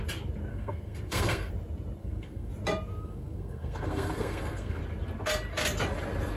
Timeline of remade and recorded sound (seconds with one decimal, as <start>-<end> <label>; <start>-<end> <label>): 0.0-0.5 recorded; 0.5-1.5 remade; 1.5-2.0 recorded; 2.0-2.5 remade; 2.5-2.9 recorded; 2.9-4.8 remade; 4.8-6.4 recorded